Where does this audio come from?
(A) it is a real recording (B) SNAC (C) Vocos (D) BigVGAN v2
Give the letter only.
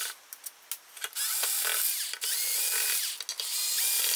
A